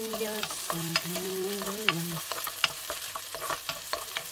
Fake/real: fake